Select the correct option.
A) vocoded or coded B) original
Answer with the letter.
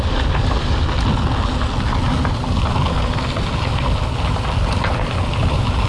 B